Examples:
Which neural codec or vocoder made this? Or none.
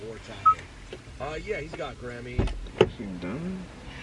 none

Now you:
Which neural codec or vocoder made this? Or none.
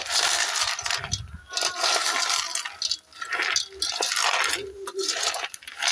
none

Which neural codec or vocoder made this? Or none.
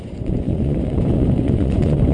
vocoder, Vocos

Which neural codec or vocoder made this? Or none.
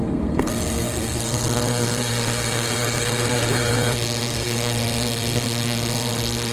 codec, SNAC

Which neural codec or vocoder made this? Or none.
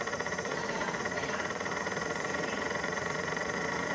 vocoder, Vocos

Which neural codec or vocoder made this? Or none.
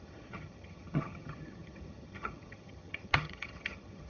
vocoder, HiFi-GAN